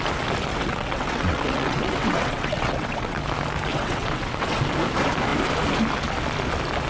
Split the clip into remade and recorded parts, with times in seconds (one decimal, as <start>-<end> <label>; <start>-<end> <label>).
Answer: 0.0-0.5 recorded; 0.5-3.2 remade; 3.2-3.7 recorded; 3.7-4.7 remade; 4.7-6.9 recorded